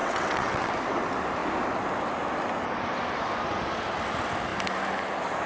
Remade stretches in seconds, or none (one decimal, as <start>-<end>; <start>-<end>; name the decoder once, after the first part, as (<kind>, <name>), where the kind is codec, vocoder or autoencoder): 0.0-0.7 (vocoder, WaveNeXt)